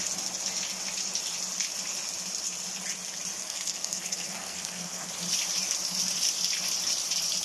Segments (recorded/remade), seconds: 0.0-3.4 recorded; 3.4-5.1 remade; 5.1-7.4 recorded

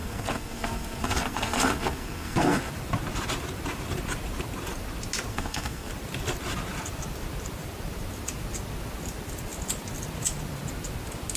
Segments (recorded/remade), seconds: 0.0-2.7 remade; 2.7-5.3 recorded; 5.3-5.9 remade; 5.9-11.4 recorded

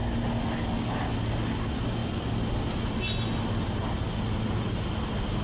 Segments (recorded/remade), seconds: 0.0-5.4 recorded